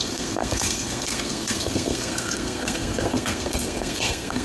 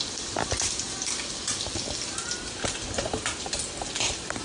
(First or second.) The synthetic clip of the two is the first